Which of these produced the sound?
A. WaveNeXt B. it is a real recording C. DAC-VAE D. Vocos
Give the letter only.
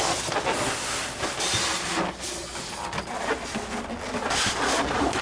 B